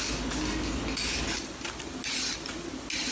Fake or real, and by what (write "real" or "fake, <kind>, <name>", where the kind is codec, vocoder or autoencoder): real